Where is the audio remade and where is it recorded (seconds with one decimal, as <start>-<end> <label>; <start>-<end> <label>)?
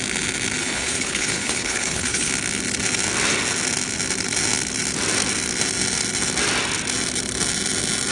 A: 0.0-0.6 recorded; 0.6-2.3 remade; 2.3-8.1 recorded